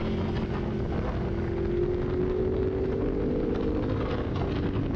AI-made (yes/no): no